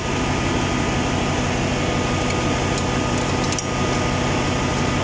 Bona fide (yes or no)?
yes